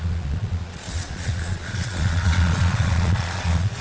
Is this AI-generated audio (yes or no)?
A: yes